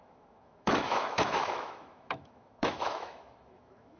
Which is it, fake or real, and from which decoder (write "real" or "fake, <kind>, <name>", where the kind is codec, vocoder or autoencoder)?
fake, autoencoder, DAC-VAE